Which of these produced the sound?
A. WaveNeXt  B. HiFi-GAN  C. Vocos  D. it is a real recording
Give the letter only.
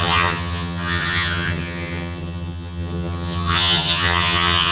B